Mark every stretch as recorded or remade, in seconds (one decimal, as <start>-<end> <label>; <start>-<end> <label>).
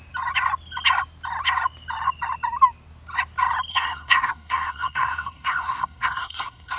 0.0-3.7 recorded; 3.7-6.8 remade